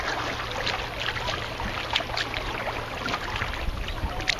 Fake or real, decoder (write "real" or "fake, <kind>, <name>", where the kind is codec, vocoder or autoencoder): real